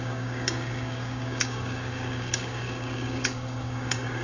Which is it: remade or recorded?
remade